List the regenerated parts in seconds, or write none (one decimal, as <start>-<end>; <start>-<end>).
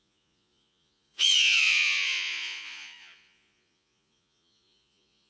0.0-5.3